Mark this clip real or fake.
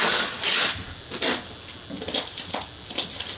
real